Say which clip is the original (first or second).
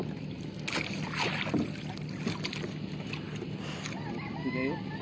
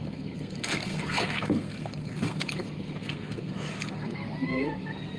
first